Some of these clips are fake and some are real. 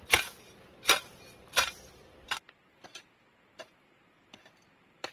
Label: fake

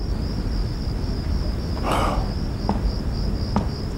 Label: real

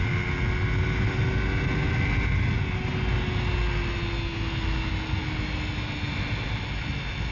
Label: real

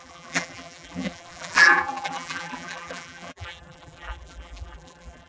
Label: fake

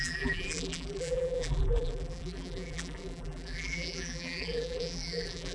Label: fake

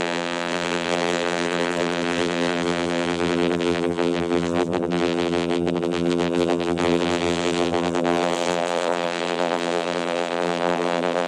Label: fake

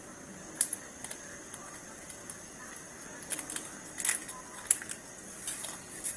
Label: real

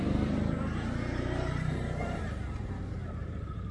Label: fake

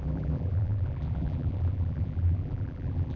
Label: fake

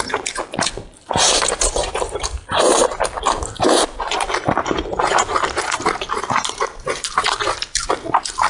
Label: fake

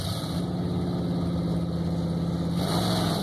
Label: real